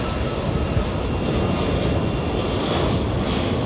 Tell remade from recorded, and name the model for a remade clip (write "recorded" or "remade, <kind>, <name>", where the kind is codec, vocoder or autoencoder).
recorded